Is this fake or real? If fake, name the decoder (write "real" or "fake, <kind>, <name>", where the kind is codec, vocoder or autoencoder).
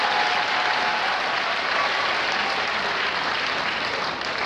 real